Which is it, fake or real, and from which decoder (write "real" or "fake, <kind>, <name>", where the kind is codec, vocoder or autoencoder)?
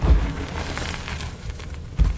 real